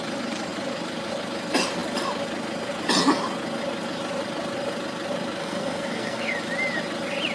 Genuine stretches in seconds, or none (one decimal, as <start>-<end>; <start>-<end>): 0.0-5.4; 6.3-7.3